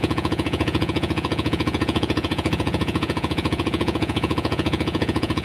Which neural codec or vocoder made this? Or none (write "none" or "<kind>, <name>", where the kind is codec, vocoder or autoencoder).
vocoder, Vocos